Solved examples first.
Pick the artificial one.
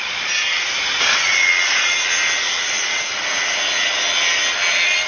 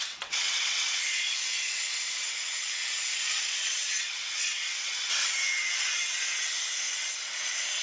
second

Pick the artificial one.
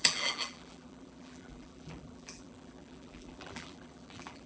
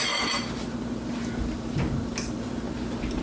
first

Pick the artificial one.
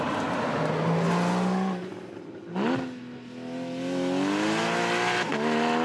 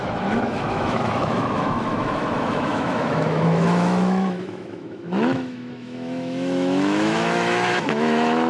second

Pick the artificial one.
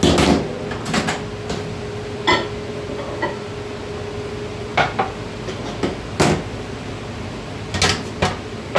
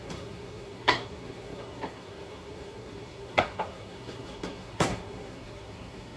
second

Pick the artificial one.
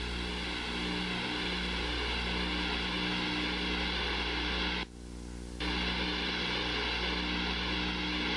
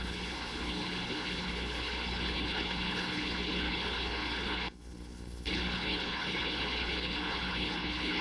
second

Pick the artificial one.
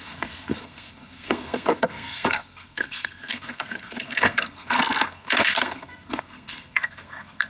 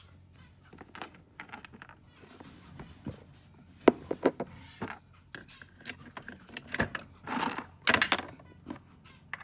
first